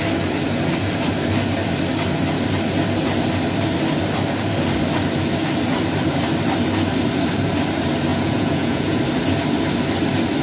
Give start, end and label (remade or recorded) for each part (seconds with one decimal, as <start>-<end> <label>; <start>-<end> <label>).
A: 0.0-8.1 recorded; 8.1-9.0 remade; 9.0-10.4 recorded